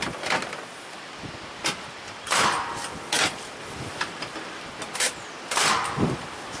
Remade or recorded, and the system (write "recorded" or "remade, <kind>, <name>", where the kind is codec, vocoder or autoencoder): remade, vocoder, BigVGAN v2